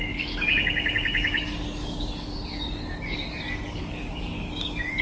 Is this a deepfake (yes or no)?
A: yes